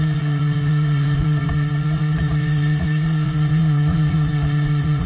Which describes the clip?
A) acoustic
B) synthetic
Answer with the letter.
B